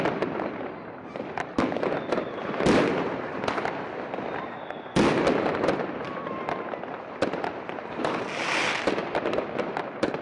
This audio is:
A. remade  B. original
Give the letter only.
B